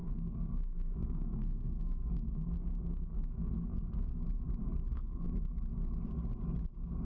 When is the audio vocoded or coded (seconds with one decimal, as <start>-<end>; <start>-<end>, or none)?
0.0-4.2; 4.9-5.5